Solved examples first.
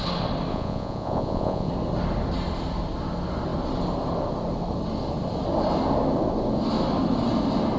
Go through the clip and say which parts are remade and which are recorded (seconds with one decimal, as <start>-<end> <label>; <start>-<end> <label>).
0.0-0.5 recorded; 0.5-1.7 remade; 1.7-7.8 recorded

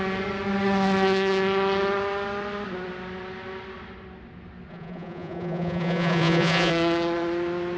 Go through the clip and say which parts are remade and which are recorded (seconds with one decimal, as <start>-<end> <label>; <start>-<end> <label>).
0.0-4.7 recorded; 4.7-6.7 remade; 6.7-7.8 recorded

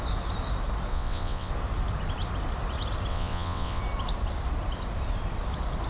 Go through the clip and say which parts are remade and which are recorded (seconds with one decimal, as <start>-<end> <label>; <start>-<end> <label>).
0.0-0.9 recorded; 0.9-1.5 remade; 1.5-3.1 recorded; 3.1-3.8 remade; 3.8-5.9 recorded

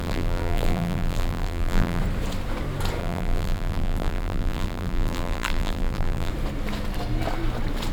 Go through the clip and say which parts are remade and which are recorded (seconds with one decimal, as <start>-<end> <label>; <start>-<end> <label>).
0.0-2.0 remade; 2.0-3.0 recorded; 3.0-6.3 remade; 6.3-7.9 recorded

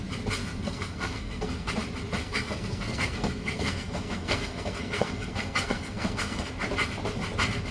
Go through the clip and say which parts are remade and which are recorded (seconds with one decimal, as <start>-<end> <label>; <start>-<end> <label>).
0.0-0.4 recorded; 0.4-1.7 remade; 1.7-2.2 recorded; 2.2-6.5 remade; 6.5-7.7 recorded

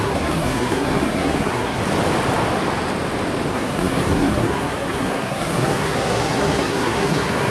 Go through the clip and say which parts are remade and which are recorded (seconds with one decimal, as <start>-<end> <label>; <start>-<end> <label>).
0.0-1.8 remade; 1.8-3.5 recorded; 3.5-7.5 remade